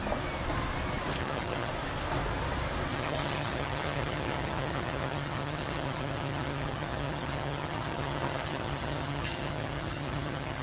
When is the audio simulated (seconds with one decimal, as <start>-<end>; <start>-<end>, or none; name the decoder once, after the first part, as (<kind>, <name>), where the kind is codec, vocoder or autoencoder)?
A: 1.2-1.7 (vocoder, HiFi-GAN); 2.9-10.6